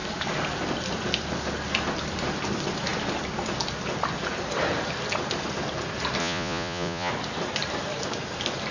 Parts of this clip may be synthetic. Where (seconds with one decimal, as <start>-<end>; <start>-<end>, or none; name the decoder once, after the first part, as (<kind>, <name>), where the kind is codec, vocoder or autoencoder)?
6.2-7.1 (vocoder, Vocos)

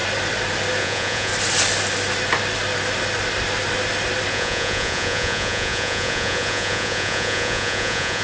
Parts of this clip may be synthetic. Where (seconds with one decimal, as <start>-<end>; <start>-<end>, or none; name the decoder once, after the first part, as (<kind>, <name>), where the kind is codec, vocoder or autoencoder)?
0.8-1.3 (vocoder, Vocos); 4.3-8.2